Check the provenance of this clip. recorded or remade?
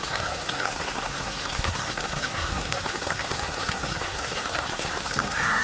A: remade